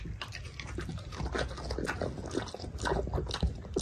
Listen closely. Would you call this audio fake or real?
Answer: real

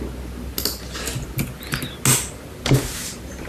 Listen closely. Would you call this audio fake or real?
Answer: real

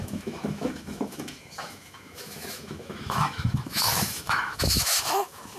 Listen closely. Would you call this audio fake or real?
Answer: fake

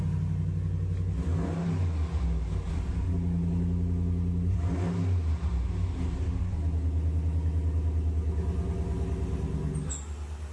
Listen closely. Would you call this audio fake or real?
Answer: real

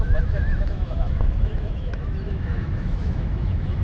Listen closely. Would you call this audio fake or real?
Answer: fake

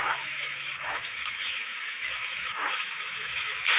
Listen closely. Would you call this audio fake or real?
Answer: fake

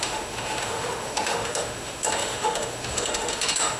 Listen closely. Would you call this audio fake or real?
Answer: fake